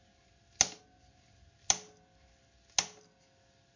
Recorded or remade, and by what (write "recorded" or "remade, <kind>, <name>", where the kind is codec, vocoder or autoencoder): recorded